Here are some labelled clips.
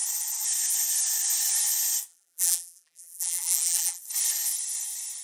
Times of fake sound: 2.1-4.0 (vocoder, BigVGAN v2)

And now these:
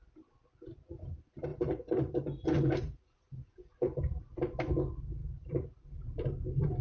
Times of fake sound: 1.5-4.2 (vocoder, BigVGAN v2); 5.2-6.8

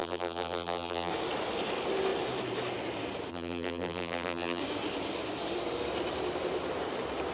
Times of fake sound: 0.0-1.1 (vocoder, BigVGAN v2); 3.3-4.6

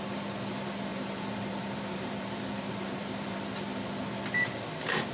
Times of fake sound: 0.9-3.4 (vocoder, BigVGAN v2)

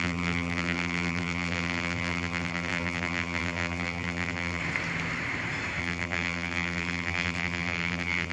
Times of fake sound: 0.0-4.6 (vocoder, BigVGAN v2); 5.8-8.3

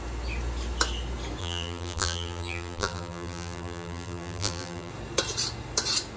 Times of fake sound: 1.4-4.9 (vocoder, BigVGAN v2)

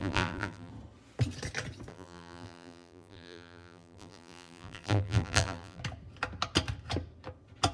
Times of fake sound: 0.0-0.7 (vocoder, BigVGAN v2); 1.9-5.8

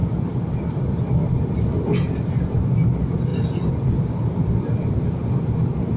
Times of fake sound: none